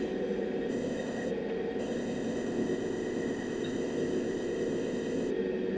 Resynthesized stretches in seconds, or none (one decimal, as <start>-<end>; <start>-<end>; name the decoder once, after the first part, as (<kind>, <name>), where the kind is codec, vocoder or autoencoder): 0.7-1.3 (codec, ZipCodec); 1.8-5.3